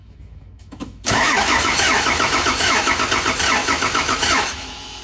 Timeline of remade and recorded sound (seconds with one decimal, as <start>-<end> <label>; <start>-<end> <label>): 0.0-3.0 remade; 3.0-3.6 recorded; 3.6-5.0 remade

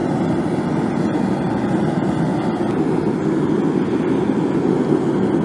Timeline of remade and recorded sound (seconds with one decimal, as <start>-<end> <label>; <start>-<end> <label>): 0.0-5.4 recorded

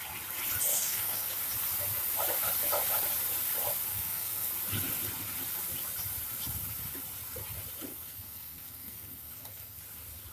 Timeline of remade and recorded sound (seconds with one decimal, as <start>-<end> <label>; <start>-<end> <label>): 0.0-0.7 recorded; 0.7-1.3 remade; 1.3-3.9 recorded; 3.9-4.5 remade; 4.5-7.9 recorded; 7.9-9.8 remade; 9.8-10.3 recorded